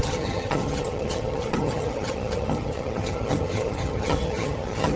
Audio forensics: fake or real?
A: fake